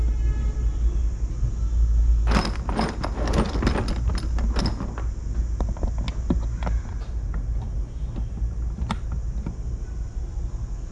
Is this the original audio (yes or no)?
yes